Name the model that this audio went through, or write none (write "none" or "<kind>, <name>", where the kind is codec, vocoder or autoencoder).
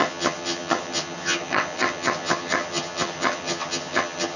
vocoder, HiFi-GAN